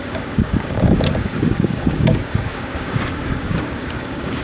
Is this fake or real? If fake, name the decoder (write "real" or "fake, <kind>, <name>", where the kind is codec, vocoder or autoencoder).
fake, codec, DAC